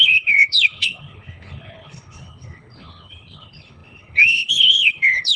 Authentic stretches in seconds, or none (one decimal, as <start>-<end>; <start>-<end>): none